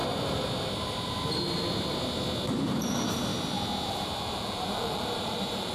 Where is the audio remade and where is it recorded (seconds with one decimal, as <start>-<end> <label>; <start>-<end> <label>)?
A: 0.0-2.6 recorded; 2.6-3.3 remade; 3.3-3.9 recorded; 3.9-5.7 remade